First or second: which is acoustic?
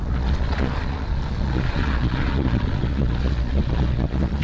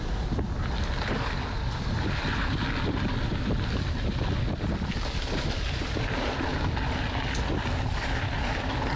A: second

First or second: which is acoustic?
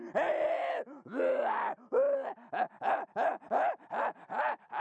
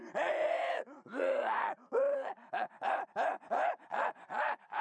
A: first